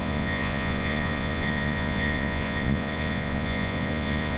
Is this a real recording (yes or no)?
no